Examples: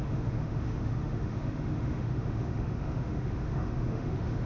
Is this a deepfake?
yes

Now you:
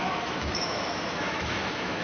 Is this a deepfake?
yes